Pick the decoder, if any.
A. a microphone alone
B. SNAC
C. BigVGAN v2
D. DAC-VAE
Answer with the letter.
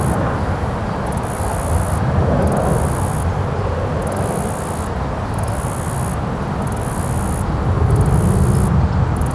A